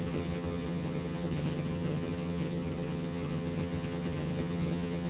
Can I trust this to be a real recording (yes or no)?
no